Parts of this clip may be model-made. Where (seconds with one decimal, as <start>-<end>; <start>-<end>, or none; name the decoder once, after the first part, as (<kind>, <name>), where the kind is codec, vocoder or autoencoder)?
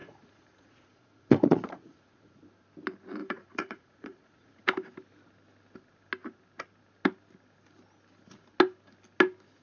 0.0-2.4 (vocoder, Vocos); 3.2-4.6